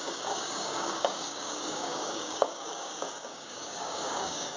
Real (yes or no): no